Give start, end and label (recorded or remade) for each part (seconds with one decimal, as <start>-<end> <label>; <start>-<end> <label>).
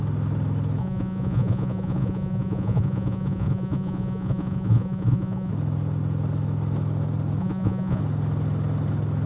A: 0.0-0.8 recorded; 0.8-5.5 remade; 5.5-7.4 recorded; 7.4-8.0 remade; 8.0-9.3 recorded